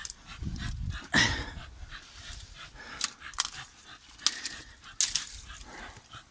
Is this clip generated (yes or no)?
no